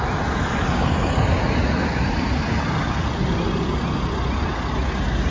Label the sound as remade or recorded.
recorded